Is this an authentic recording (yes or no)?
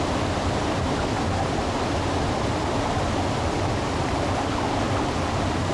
yes